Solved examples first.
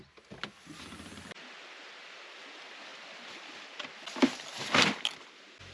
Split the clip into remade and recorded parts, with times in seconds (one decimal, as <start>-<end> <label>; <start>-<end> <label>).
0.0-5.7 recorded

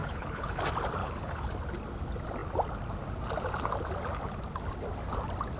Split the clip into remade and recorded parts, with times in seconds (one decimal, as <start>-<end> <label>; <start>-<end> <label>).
0.0-0.6 remade; 0.6-1.0 recorded; 1.0-1.5 remade; 1.5-5.6 recorded

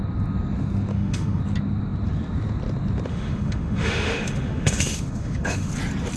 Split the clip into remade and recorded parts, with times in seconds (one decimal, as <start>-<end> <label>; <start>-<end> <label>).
0.0-0.9 recorded; 0.9-1.4 remade; 1.4-3.1 recorded; 3.1-5.7 remade; 5.7-6.2 recorded

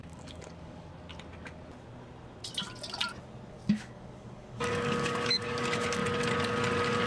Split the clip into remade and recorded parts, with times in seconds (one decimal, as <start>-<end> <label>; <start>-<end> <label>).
0.0-0.9 remade; 0.9-3.5 recorded; 3.5-6.0 remade; 6.0-7.1 recorded